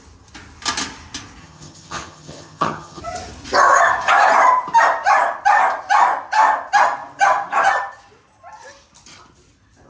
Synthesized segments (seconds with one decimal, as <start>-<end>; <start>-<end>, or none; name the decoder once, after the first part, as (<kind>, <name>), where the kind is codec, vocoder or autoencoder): 1.4-3.0 (vocoder, HiFi-GAN)